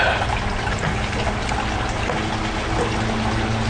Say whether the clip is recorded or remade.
recorded